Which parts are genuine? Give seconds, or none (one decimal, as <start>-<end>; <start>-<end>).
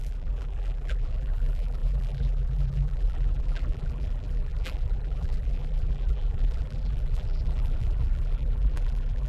none